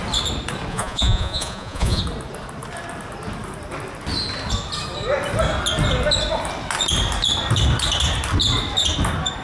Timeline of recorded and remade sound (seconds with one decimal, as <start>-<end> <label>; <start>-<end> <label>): 0.0-0.7 recorded; 0.7-2.0 remade; 2.0-9.4 recorded